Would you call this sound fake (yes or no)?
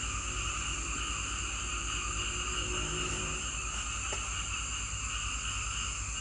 no